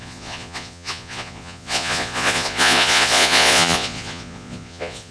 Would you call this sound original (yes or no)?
no